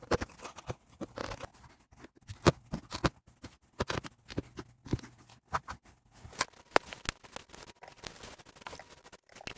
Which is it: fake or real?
real